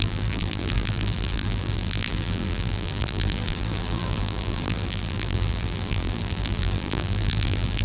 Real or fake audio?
fake